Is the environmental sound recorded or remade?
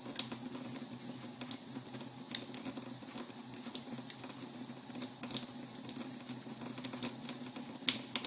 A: recorded